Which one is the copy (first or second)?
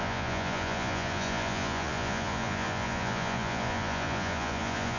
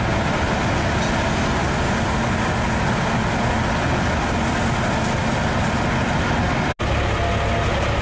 first